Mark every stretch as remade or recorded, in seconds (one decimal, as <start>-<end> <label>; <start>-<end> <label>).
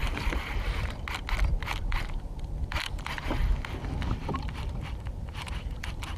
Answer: 0.0-1.8 recorded; 1.8-3.4 remade; 3.4-5.1 recorded; 5.1-6.2 remade